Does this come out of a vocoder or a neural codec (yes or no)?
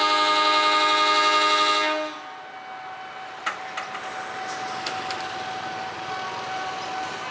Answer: no